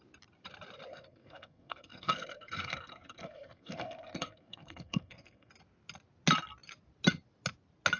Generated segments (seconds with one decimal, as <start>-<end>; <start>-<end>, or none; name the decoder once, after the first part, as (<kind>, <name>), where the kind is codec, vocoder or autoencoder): 0.9-5.5 (codec, SNAC)